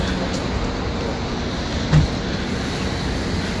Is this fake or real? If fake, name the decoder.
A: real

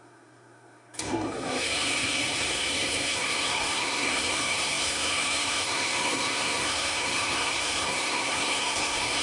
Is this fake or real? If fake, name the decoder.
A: fake, codec, SNAC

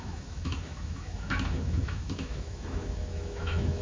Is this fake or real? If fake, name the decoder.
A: fake, autoencoder, DAC-VAE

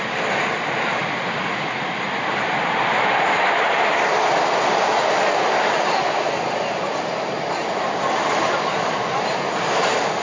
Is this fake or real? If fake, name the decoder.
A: real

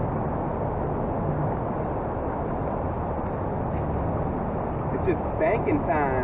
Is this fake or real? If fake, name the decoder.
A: real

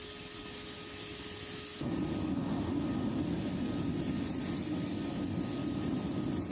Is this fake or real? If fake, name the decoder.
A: real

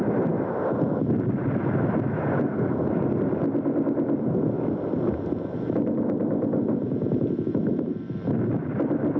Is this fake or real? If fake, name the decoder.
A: real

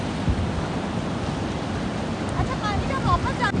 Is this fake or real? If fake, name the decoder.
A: real